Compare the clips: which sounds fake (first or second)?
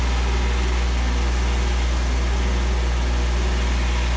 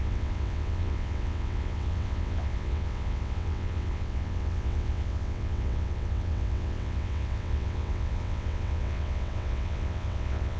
second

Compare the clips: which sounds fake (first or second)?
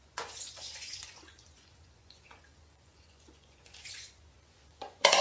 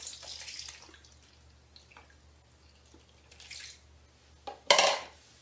first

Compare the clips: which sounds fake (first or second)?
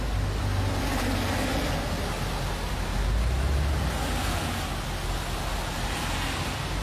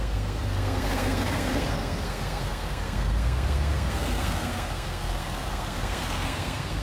second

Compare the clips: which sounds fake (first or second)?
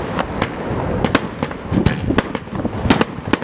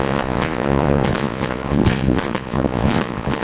second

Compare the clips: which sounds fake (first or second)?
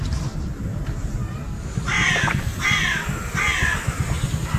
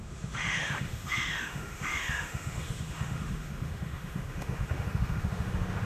second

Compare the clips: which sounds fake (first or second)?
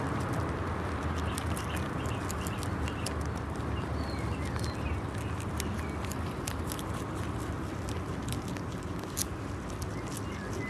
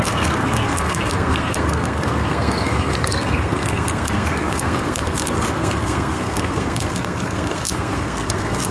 second